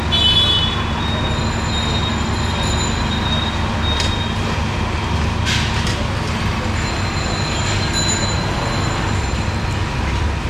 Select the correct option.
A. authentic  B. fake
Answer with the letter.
A